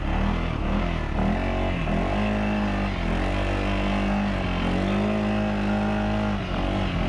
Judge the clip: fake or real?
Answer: real